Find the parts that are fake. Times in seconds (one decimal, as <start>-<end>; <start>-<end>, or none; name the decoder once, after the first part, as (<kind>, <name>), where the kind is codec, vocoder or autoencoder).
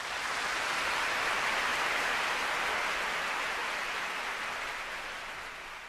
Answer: none